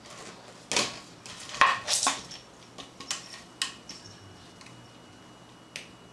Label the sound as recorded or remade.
recorded